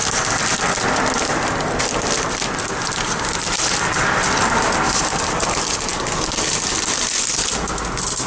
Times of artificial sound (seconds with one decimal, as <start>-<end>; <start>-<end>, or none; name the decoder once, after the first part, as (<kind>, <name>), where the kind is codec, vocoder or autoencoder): none